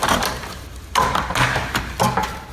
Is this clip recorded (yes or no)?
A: yes